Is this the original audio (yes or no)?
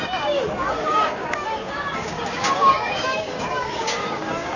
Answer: no